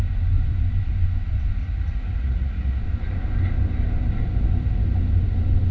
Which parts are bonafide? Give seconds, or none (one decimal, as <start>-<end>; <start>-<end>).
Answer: 0.0-1.6; 2.8-5.7